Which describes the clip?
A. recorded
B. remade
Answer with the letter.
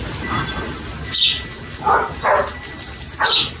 A